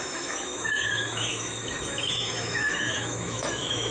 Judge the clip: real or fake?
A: fake